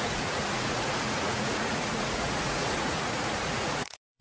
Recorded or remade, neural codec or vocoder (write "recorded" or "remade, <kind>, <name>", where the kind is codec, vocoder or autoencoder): remade, vocoder, Vocos